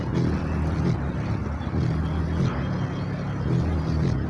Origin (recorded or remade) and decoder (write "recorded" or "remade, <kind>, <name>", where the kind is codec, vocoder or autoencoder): recorded